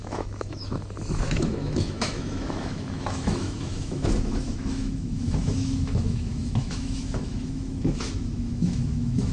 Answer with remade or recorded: remade